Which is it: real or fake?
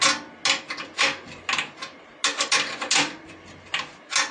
real